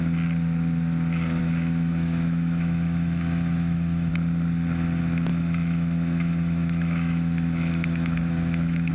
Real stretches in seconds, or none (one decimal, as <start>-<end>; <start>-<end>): 0.0-1.4; 4.1-5.3